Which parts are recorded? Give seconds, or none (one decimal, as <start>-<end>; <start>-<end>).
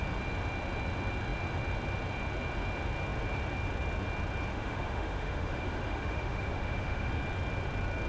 0.0-4.5; 7.1-8.1